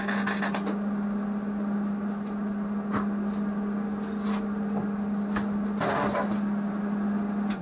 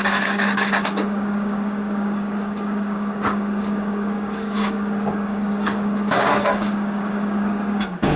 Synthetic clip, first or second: second